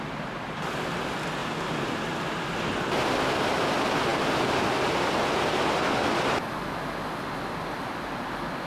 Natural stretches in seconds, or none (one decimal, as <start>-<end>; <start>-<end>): 0.0-1.4; 1.9-8.7